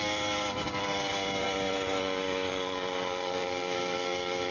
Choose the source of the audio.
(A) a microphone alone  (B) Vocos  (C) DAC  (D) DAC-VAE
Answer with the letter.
C